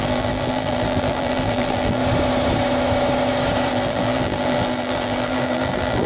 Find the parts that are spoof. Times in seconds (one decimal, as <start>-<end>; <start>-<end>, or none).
0.0-2.0; 3.7-6.1